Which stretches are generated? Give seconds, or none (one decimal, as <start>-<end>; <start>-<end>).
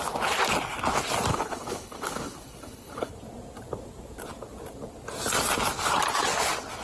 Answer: 1.3-3.1